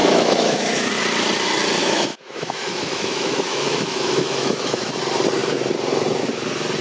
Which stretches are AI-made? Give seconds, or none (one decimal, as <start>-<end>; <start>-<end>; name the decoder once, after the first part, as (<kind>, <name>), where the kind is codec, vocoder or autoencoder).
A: 0.0-0.9 (autoencoder, DAC-VAE); 1.8-4.9